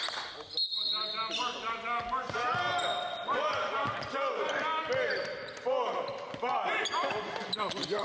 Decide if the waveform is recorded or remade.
recorded